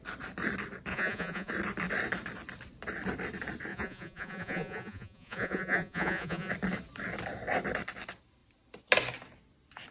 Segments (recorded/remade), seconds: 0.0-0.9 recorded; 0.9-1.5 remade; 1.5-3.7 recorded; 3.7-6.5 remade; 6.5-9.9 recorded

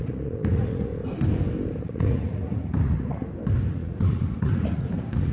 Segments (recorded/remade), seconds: 0.0-0.9 remade; 0.9-1.8 recorded; 1.8-3.2 remade; 3.2-3.7 recorded; 3.7-5.3 remade

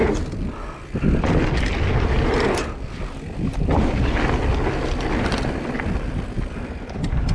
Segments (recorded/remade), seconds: 0.0-7.3 recorded

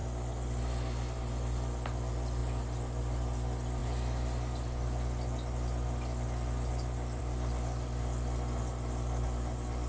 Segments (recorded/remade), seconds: 0.0-9.9 recorded

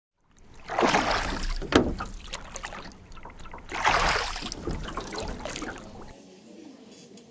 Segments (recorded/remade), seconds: 0.0-7.3 recorded

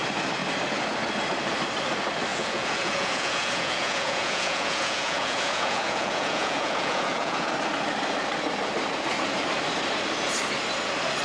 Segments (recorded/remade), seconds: 0.0-2.3 recorded; 2.3-7.5 remade; 7.5-11.2 recorded

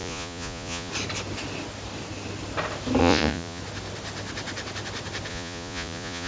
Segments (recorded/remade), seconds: 0.0-0.9 remade; 0.9-3.0 recorded; 3.0-3.6 remade; 3.6-5.3 recorded; 5.3-6.3 remade